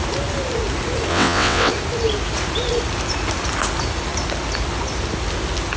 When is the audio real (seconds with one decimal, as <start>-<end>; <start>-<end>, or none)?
0.0-1.1; 1.7-5.8